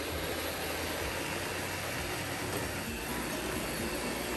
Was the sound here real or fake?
real